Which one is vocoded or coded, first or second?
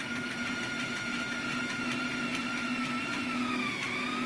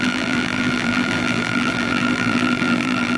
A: second